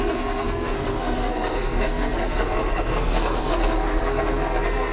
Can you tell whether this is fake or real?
fake